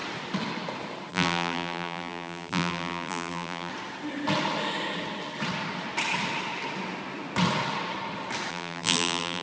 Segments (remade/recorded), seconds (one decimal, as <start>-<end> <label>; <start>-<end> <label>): 0.0-1.1 recorded; 1.1-3.7 remade; 3.7-8.5 recorded; 8.5-9.4 remade

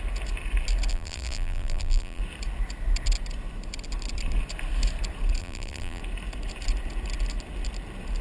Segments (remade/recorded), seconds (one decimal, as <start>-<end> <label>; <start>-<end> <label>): 0.0-0.9 recorded; 0.9-2.2 remade; 2.2-5.4 recorded; 5.4-6.0 remade; 6.0-8.2 recorded

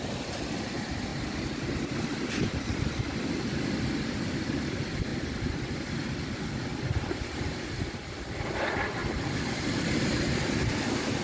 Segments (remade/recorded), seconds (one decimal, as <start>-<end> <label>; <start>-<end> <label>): 0.0-1.1 remade; 1.1-2.3 recorded; 2.3-5.1 remade; 5.1-8.4 recorded; 8.4-9.0 remade; 9.0-10.7 recorded; 10.7-11.2 remade

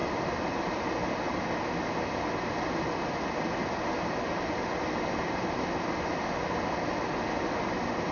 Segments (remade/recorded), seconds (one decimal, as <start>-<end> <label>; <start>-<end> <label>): 0.0-0.9 remade; 0.9-8.1 recorded